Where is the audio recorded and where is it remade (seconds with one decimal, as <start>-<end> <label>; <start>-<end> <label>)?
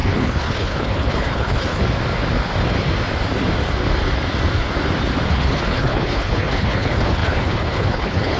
0.0-1.8 remade; 1.8-5.3 recorded; 5.3-8.4 remade